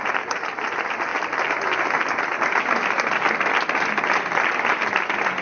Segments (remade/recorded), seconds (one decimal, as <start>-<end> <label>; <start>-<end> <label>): 0.0-5.4 recorded